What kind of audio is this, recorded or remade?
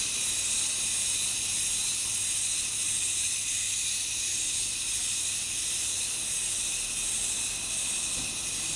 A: recorded